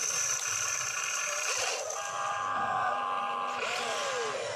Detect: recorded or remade recorded